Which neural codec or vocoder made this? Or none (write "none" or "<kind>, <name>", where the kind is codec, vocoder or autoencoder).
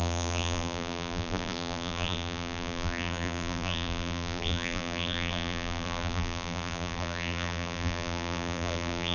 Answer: vocoder, BigVGAN v2